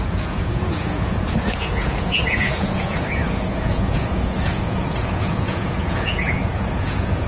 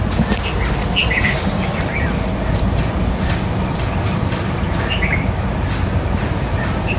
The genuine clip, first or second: second